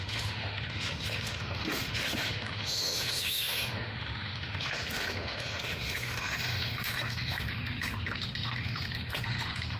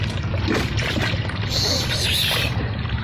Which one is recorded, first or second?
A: second